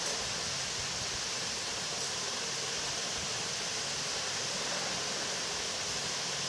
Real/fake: real